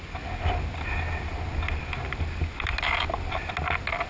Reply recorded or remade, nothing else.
recorded